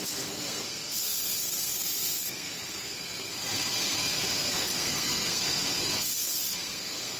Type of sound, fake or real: fake